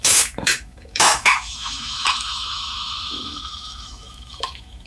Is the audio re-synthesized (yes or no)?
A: yes